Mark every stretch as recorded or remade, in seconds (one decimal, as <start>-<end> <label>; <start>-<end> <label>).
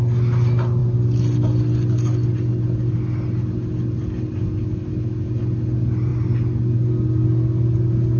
0.0-8.2 recorded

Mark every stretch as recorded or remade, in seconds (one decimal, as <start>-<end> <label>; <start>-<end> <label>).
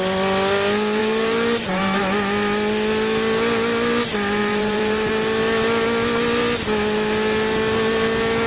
0.0-1.0 recorded; 1.0-2.0 remade; 2.0-4.4 recorded; 4.4-5.1 remade; 5.1-8.5 recorded